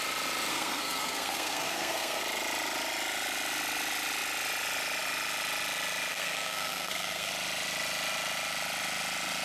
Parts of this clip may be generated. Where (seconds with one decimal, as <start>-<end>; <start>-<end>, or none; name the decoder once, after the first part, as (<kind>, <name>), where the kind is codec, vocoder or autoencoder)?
0.5-2.2 (codec, SNAC); 6.1-7.3

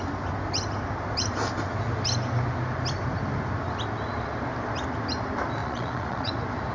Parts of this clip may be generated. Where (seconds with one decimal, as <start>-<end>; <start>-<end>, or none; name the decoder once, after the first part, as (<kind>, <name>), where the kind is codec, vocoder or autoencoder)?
5.6-6.3 (vocoder, Vocos)

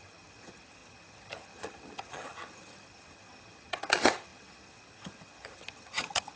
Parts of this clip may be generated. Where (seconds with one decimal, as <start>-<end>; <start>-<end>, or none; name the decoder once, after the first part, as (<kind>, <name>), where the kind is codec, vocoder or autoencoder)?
0.0-6.4 (vocoder, HiFi-GAN)

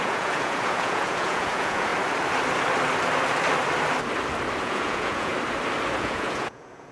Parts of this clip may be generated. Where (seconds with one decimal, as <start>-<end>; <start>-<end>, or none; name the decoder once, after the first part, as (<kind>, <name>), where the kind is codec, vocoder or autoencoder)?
0.0-1.9 (vocoder, Vocos); 4.6-5.3; 6.0-6.9

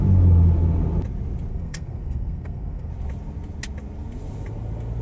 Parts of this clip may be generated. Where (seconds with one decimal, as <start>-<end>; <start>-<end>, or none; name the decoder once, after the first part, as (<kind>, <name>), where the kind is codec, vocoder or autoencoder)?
1.5-2.9 (codec, SNAC)